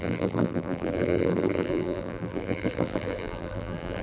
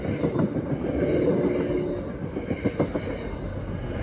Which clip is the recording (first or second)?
second